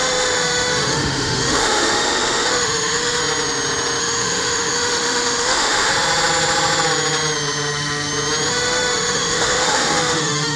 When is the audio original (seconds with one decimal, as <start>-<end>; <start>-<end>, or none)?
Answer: 3.2-4.0; 5.9-8.5